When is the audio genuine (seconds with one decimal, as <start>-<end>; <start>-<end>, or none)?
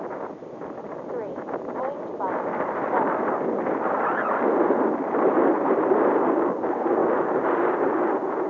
0.0-8.5